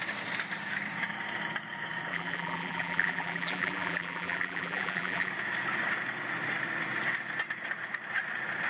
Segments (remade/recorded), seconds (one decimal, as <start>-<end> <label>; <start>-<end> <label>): 0.0-2.1 recorded; 2.1-5.3 remade; 5.3-8.7 recorded